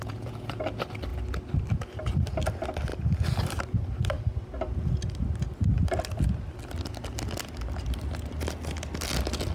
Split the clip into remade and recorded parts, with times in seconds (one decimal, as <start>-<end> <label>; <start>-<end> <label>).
0.0-0.6 remade; 0.6-9.5 recorded